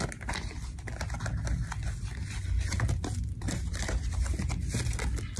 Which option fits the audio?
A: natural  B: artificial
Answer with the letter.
A